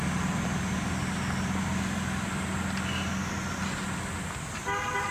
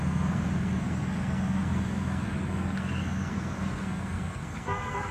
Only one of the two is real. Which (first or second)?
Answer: first